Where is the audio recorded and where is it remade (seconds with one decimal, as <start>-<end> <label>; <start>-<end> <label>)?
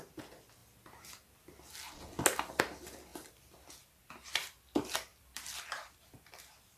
0.0-3.1 recorded; 3.1-3.7 remade; 3.7-5.1 recorded; 5.1-6.3 remade; 6.3-6.8 recorded